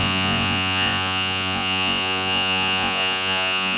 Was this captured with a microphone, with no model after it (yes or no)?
no